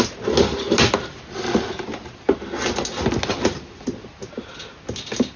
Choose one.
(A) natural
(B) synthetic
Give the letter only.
A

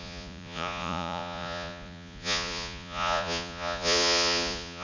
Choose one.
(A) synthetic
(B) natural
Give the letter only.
A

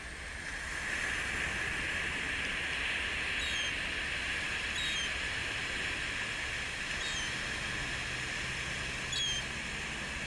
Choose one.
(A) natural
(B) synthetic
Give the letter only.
A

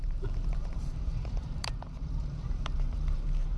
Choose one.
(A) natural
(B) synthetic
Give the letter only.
B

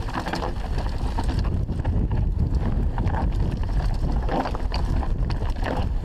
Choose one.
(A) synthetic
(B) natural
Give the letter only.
B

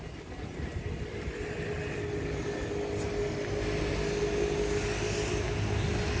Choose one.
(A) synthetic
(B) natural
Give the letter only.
B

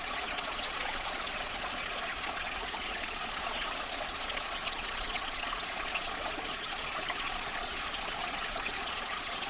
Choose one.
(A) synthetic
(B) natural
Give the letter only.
A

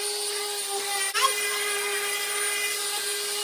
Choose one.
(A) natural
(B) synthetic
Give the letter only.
A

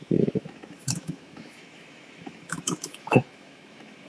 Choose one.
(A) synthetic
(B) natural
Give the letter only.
A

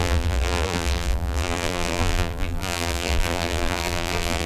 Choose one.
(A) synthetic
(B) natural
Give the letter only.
A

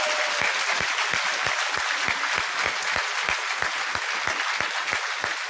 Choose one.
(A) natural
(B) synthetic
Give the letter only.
A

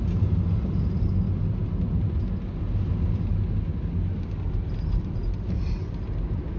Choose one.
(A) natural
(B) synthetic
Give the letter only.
A